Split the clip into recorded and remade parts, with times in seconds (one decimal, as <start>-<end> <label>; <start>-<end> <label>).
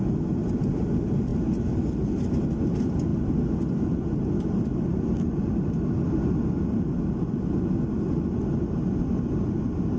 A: 0.0-10.0 recorded